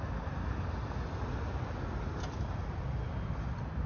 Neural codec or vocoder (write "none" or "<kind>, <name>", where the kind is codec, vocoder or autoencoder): none